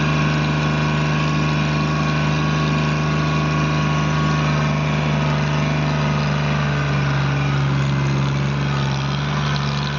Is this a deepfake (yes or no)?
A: no